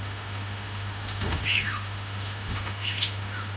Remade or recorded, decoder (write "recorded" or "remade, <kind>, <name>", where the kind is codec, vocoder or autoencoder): remade, autoencoder, DAC-VAE